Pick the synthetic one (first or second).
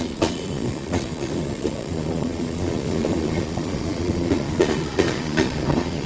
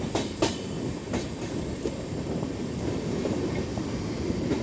first